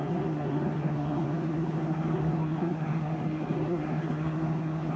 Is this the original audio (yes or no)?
no